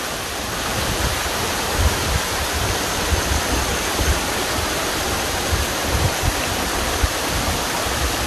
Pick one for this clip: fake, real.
fake